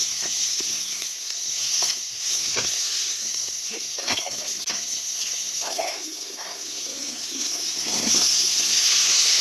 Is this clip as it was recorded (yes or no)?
no